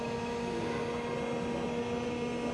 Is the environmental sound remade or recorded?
recorded